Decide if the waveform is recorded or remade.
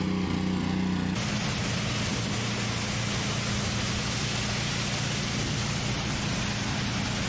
recorded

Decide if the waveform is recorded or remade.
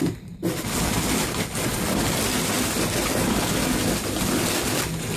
recorded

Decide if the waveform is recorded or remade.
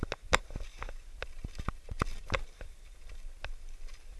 recorded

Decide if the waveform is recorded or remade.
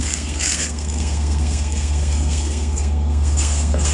remade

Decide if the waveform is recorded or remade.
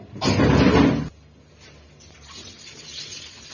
recorded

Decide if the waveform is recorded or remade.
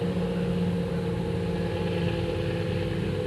recorded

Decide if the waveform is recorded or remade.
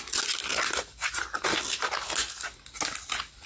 recorded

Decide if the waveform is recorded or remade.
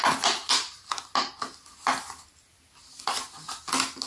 recorded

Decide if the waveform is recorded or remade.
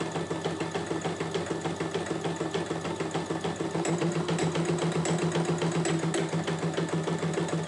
recorded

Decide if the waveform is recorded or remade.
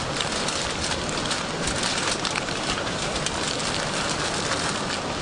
recorded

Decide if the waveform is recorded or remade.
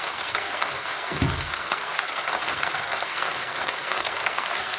remade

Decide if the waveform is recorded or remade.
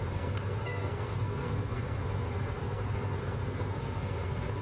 remade